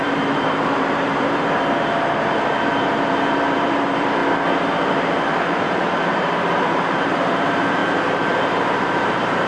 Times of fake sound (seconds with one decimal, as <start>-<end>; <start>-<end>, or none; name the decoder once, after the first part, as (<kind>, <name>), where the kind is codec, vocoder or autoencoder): 0.0-4.2 (vocoder, BigVGAN v2); 4.9-9.5